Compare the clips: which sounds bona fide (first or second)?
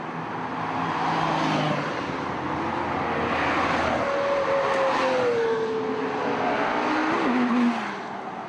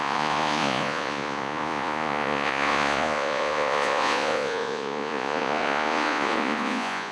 first